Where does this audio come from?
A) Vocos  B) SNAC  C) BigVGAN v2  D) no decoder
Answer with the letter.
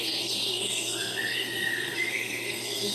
B